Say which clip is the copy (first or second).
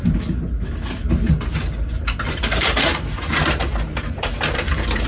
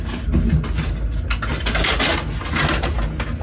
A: first